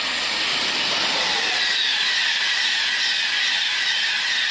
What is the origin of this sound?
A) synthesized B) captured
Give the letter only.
B